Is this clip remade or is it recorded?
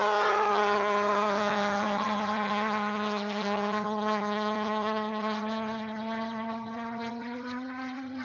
remade